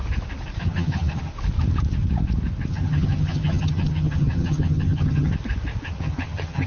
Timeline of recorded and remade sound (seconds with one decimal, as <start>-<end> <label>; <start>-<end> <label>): 0.0-0.6 recorded; 0.6-1.3 remade; 1.3-2.7 recorded; 2.7-5.3 remade; 5.3-5.9 recorded; 5.9-6.7 remade